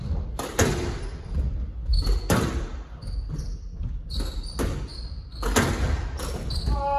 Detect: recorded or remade recorded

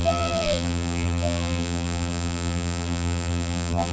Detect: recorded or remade remade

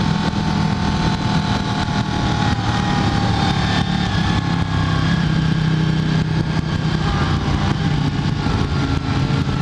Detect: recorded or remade recorded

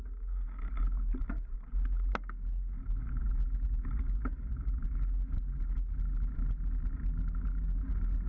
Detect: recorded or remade recorded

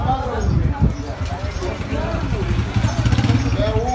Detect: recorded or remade recorded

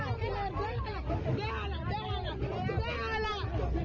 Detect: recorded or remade recorded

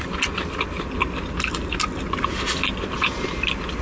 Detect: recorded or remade recorded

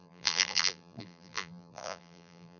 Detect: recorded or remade remade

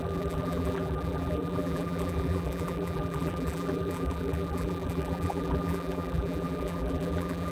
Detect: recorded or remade remade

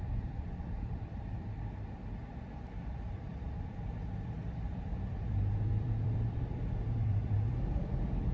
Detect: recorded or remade remade